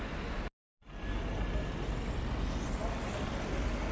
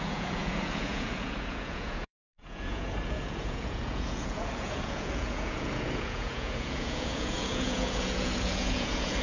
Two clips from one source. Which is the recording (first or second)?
first